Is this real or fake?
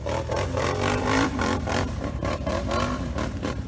fake